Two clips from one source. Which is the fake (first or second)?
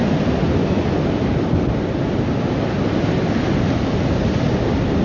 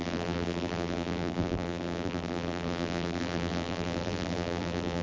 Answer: second